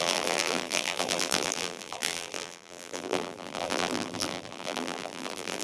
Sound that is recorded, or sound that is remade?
remade